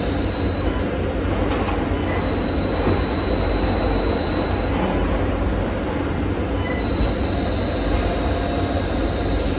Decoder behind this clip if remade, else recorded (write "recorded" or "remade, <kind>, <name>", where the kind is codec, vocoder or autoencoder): recorded